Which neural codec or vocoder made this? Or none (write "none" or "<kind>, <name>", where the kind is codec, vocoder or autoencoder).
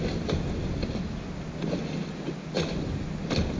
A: none